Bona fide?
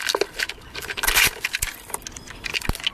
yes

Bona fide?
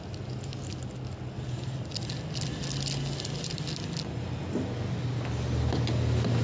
yes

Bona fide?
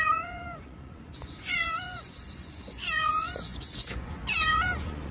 no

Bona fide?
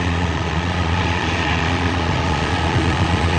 no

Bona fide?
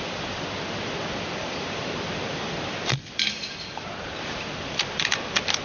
no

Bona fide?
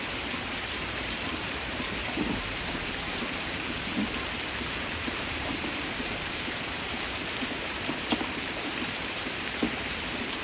no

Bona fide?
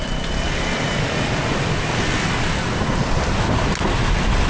yes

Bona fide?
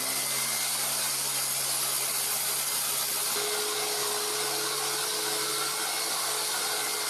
yes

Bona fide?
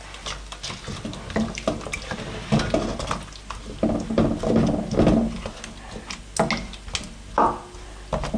yes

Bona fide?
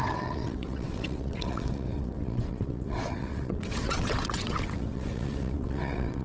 no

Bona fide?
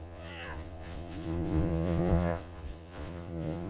no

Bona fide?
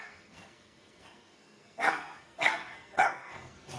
no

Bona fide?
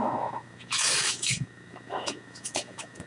no